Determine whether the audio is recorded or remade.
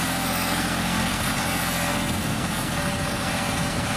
remade